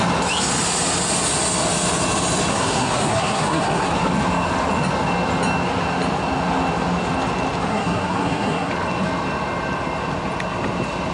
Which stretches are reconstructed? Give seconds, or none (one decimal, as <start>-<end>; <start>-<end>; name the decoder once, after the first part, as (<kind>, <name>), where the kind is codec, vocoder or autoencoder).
2.5-3.9 (codec, SNAC); 7.7-8.7